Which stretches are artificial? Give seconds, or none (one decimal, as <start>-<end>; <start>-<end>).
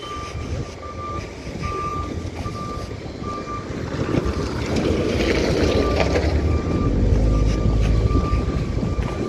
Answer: none